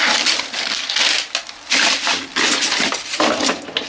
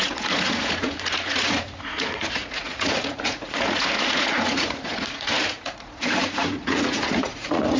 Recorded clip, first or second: first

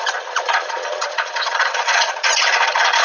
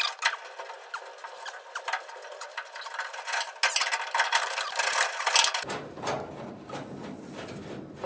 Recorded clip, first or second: second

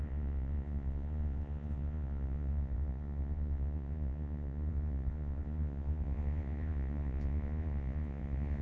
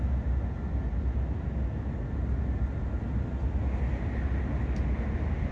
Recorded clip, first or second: second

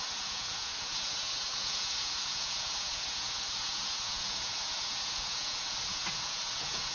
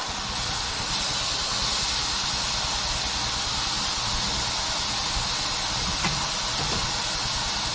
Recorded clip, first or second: second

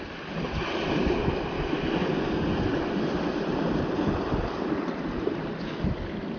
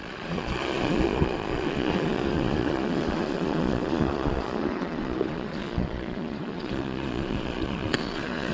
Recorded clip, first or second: first